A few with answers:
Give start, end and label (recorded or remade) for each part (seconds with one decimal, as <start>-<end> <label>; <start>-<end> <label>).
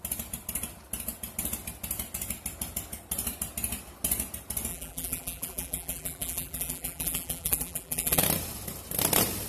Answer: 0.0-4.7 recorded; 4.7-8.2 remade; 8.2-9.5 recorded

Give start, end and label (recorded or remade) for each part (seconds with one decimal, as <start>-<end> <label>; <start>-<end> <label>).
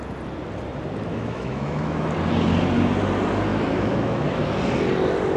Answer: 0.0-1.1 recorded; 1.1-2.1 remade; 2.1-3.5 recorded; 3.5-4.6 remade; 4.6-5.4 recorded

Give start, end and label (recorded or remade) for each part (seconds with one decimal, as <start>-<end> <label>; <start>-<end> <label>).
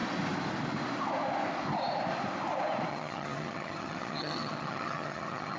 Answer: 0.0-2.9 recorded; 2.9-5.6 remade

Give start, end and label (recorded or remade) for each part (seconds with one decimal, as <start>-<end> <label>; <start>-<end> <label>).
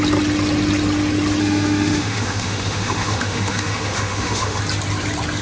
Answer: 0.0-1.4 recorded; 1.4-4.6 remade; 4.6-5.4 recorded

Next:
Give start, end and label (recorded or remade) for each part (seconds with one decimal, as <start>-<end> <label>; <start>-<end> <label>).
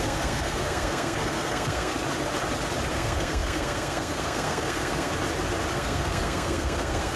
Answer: 0.0-1.9 remade; 1.9-2.9 recorded; 2.9-5.1 remade; 5.1-5.7 recorded; 5.7-7.2 remade